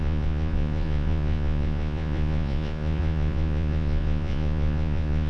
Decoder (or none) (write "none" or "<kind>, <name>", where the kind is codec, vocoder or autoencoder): vocoder, Vocos